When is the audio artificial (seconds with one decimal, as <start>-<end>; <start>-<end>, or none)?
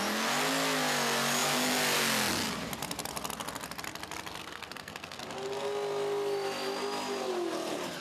4.4-5.2